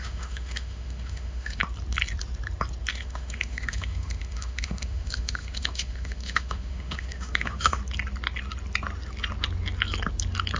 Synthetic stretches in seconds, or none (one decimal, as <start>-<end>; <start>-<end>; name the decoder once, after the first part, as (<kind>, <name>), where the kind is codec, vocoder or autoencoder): 0.0-1.6 (autoencoder, DAC-VAE); 2.9-7.8